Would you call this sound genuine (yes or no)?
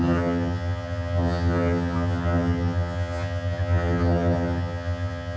no